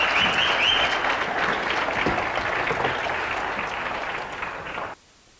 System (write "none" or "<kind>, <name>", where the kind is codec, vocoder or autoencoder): none